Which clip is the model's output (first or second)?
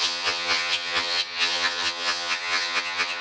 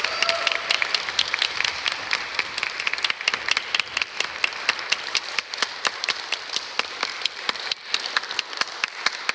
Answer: first